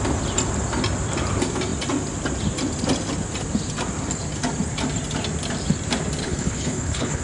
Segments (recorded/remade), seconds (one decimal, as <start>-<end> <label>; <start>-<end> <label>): 0.0-6.2 recorded; 6.2-7.2 remade